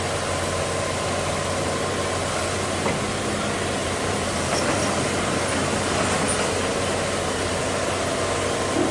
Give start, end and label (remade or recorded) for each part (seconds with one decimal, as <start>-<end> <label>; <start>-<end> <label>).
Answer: 0.0-3.8 recorded; 3.8-4.9 remade; 4.9-8.9 recorded